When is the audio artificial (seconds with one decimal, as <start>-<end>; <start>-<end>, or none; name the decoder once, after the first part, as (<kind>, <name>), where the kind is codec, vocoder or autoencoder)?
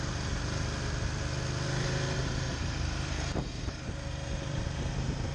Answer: 2.2-5.3 (vocoder, BigVGAN v2)